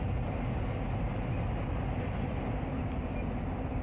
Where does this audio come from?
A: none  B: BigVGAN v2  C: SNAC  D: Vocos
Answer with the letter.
A